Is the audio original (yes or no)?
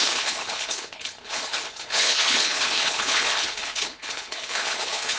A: no